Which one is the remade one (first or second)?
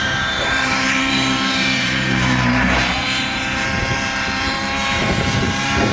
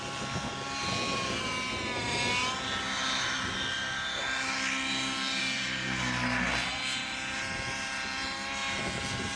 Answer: first